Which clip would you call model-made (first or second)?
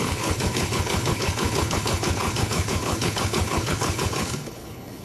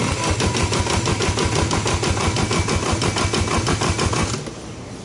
first